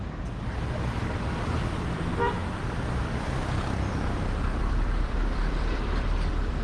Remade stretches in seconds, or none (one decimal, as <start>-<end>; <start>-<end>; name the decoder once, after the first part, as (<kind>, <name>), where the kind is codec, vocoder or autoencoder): 0.0-2.1 (vocoder, BigVGAN v2); 4.6-6.6